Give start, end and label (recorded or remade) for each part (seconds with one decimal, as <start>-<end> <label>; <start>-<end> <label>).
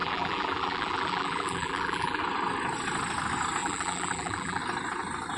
0.0-2.2 remade; 2.2-3.6 recorded; 3.6-4.6 remade; 4.6-5.4 recorded